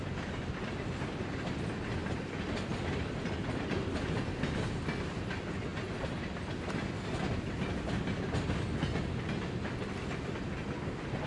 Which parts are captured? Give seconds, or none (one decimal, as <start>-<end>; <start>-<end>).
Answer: 0.0-11.3